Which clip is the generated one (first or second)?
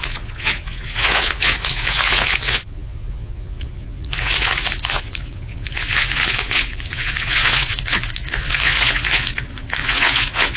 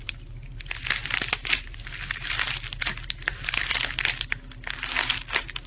first